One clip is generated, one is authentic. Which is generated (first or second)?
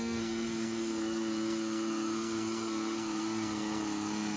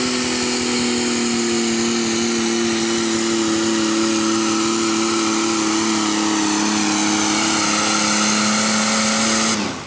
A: first